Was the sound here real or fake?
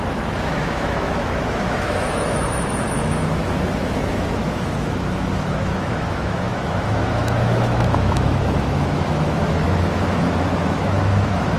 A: fake